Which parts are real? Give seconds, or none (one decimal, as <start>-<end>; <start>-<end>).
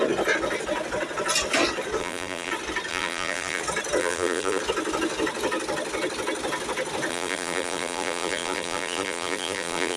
0.0-2.0; 2.5-2.9; 3.6-4.0; 4.6-7.1